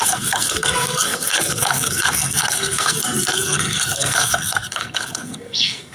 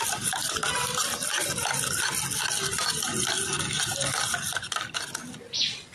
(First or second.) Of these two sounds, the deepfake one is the first